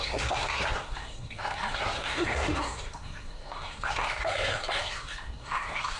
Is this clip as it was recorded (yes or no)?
no